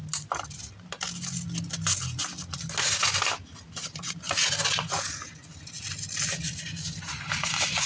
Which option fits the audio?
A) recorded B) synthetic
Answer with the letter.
A